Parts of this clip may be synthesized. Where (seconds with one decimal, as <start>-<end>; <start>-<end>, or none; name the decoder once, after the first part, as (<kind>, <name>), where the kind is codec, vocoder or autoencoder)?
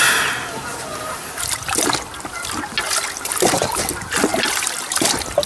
none